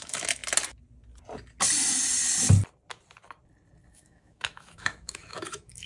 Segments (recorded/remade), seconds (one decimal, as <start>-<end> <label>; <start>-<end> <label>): 0.0-0.4 remade; 0.4-3.9 recorded; 3.9-5.9 remade